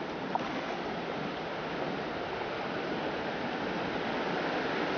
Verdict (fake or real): real